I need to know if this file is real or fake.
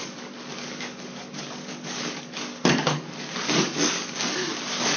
fake